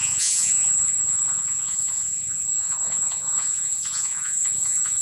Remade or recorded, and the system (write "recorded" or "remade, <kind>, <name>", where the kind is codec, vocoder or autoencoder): remade, vocoder, Vocos